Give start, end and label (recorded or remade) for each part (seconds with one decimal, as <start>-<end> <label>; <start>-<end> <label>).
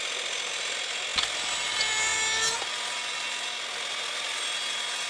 0.0-5.1 recorded